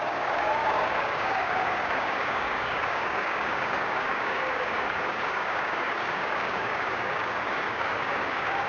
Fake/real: fake